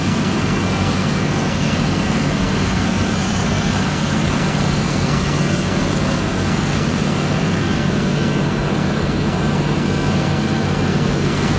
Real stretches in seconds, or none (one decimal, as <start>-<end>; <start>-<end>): none

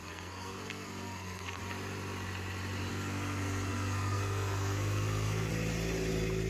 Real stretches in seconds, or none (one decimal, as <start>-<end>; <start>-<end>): 1.6-2.9; 5.5-6.5

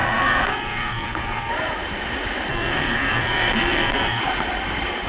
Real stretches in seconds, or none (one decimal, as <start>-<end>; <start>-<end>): 1.5-2.5; 4.2-5.1